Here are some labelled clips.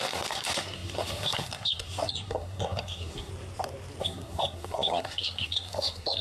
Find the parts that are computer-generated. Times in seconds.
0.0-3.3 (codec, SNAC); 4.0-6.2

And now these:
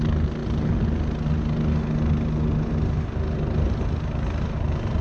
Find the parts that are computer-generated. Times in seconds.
none

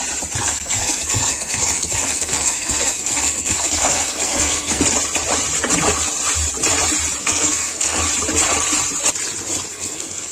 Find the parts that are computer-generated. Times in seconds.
0.4-4.8 (codec, SNAC); 7.2-8.0; 9.7-10.3

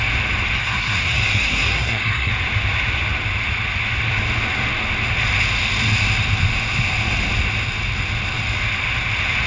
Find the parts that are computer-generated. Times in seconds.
0.6-2.3 (codec, SNAC)

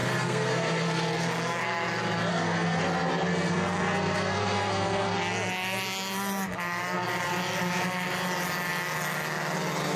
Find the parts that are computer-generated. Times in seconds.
0.0-1.9 (codec, SNAC); 2.3-2.8; 3.3-5.2

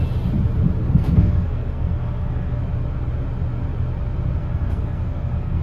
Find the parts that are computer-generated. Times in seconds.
0.8-2.6 (codec, SNAC); 4.4-5.6

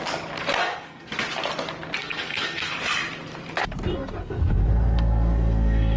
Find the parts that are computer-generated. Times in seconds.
0.6-1.1 (codec, SNAC); 2.0-2.7; 4.2-6.0